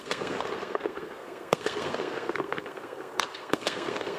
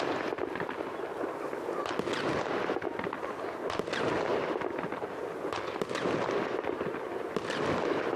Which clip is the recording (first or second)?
second